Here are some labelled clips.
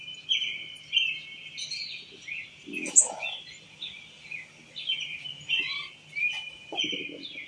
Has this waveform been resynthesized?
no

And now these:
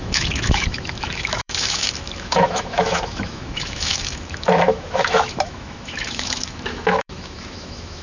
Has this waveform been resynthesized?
yes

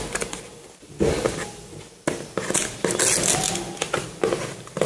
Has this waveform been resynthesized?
no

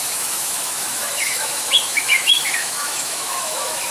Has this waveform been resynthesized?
yes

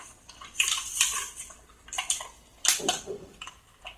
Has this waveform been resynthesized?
yes